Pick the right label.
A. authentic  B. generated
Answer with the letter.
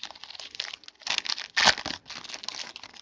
A